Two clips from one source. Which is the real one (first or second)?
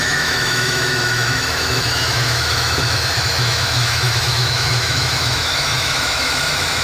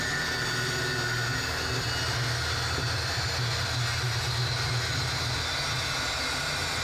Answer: second